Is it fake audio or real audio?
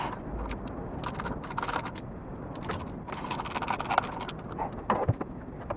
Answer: real